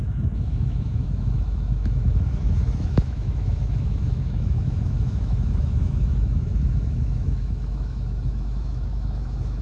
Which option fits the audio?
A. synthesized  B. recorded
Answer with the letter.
A